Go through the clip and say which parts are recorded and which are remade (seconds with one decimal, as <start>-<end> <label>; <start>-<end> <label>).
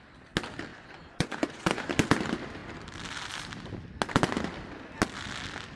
0.0-0.7 recorded; 0.7-1.9 remade; 1.9-5.8 recorded